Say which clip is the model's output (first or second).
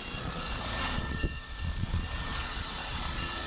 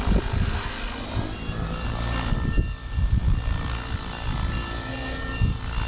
first